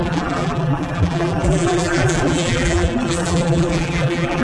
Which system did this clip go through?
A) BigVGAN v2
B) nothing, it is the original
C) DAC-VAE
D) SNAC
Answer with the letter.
A